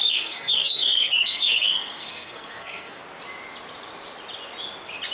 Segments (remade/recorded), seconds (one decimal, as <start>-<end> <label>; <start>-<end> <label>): 0.0-3.0 remade; 3.0-5.1 recorded